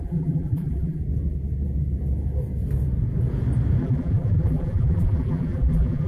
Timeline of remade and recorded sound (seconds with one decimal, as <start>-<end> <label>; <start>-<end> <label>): 0.0-1.0 remade; 1.0-3.8 recorded; 3.8-6.1 remade